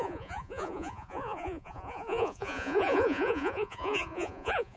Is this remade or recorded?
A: remade